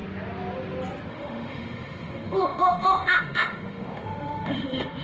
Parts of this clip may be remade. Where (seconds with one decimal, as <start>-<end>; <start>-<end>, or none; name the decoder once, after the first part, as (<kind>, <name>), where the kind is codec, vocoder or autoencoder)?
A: 1.1-5.0 (autoencoder, DAC-VAE)